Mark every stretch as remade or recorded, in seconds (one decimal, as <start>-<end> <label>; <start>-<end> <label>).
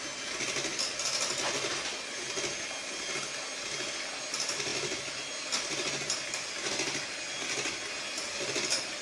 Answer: 0.0-9.0 recorded